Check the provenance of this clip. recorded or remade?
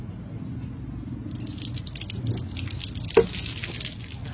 recorded